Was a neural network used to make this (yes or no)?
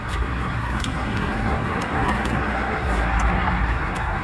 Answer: yes